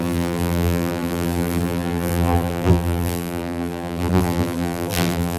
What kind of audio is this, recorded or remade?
remade